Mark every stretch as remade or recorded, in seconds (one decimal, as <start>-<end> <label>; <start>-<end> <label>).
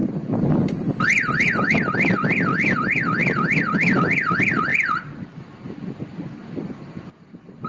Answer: 0.0-4.7 recorded; 4.7-5.9 remade; 5.9-7.7 recorded